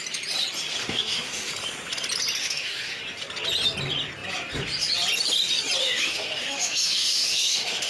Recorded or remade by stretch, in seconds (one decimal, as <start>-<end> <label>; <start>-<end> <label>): 0.0-0.8 recorded; 0.8-1.5 remade; 1.5-2.4 recorded; 2.4-3.0 remade; 3.0-5.8 recorded; 5.8-7.9 remade